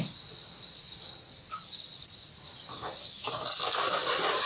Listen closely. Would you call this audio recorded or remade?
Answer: recorded